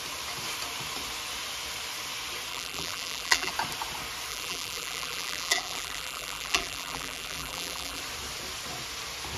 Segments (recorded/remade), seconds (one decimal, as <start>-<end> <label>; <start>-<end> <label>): 0.0-2.5 recorded; 2.5-3.5 remade; 3.5-4.3 recorded; 4.3-8.0 remade; 8.0-9.4 recorded